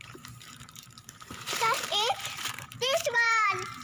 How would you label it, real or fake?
fake